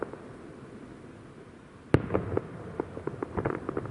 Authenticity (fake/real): real